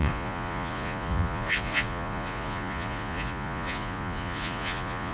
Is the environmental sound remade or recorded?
remade